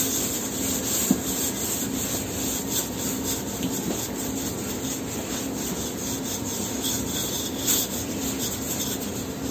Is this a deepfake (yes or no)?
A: no